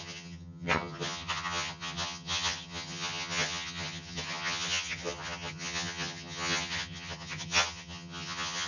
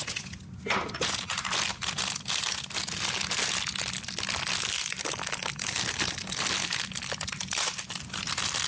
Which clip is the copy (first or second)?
first